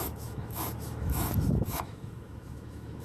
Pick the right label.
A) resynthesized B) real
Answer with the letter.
A